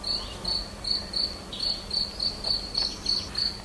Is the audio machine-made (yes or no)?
no